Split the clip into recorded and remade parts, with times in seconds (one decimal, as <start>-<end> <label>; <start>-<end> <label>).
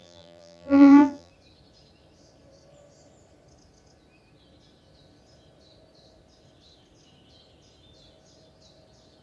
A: 0.0-1.3 remade; 1.3-9.2 recorded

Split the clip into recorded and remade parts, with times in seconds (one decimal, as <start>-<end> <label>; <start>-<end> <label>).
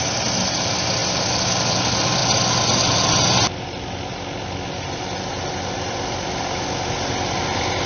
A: 0.0-7.9 recorded